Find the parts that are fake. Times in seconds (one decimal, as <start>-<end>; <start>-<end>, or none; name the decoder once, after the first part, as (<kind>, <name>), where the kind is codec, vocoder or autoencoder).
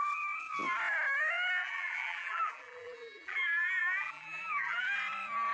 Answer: 1.6-4.9 (vocoder, BigVGAN v2)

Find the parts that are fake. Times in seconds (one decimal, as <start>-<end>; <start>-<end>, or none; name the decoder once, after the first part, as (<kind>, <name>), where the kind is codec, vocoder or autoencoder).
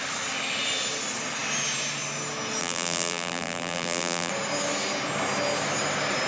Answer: 2.6-4.3 (vocoder, BigVGAN v2)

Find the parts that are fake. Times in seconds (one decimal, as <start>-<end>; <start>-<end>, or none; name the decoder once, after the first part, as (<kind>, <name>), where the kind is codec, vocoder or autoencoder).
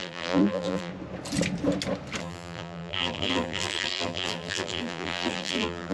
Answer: 0.0-0.9 (vocoder, BigVGAN v2); 2.2-5.9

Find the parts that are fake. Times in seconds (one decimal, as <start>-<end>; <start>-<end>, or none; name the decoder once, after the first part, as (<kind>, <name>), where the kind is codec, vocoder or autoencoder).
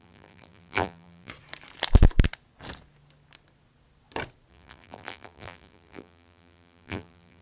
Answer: 0.0-1.3 (vocoder, BigVGAN v2); 4.5-7.4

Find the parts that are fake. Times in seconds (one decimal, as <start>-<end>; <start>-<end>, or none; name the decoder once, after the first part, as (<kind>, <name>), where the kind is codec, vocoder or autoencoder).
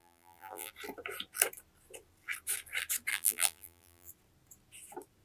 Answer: 0.0-0.7 (vocoder, BigVGAN v2); 3.1-4.1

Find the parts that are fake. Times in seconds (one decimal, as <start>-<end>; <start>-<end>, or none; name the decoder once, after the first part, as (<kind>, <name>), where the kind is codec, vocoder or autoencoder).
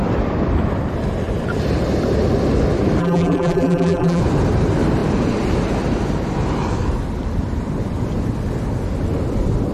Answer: 3.0-4.2 (vocoder, BigVGAN v2)